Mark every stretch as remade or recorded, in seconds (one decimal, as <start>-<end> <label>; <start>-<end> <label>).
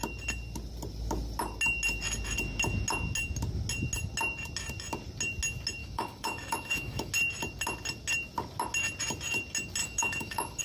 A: 0.0-5.8 recorded; 5.8-7.1 remade; 7.1-9.8 recorded; 9.8-10.6 remade